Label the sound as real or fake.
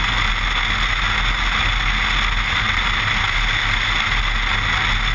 real